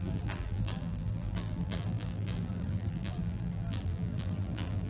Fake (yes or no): yes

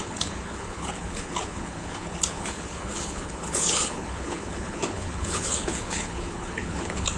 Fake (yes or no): yes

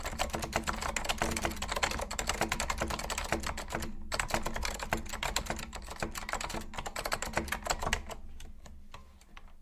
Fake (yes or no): no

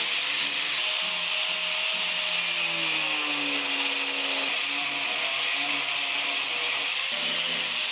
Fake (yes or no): no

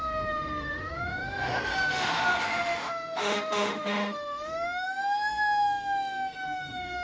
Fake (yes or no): yes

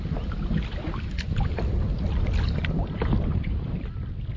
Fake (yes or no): no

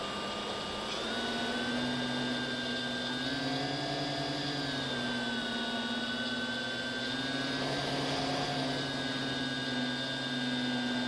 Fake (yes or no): no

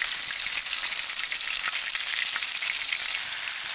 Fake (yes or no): no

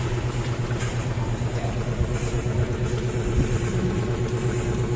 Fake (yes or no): yes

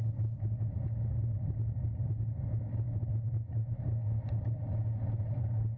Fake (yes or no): no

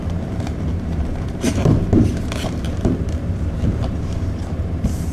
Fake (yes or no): yes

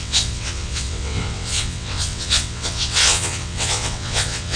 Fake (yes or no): yes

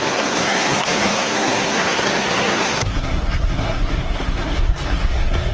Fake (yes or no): yes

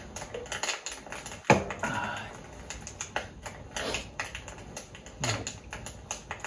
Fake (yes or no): no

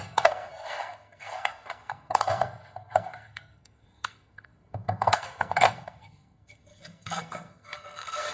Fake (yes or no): yes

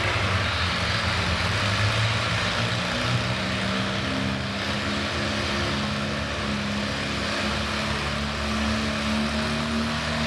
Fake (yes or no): no